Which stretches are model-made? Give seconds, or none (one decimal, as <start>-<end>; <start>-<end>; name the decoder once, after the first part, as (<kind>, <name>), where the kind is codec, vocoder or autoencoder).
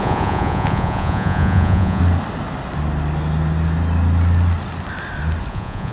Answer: 0.0-2.0 (vocoder, Vocos); 5.5-5.9